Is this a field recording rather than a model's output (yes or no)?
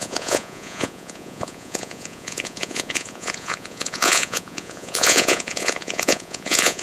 no